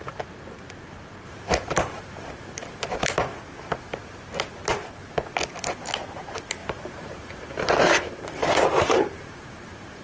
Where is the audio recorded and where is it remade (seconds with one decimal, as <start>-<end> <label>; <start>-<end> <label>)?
0.0-3.3 remade; 3.3-6.1 recorded; 6.1-10.0 remade